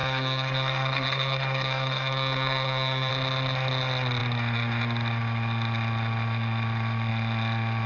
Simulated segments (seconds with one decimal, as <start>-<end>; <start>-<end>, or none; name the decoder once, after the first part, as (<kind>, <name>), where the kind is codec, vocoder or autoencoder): 0.0-3.1 (codec, SNAC)